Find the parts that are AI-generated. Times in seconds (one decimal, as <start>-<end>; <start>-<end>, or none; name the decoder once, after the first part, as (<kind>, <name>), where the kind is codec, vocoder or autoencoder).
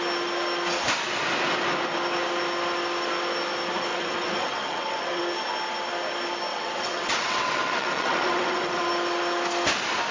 3.9-5.2 (vocoder, WaveNeXt); 6.5-8.8